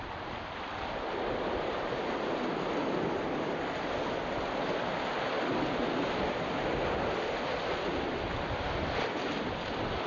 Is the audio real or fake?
real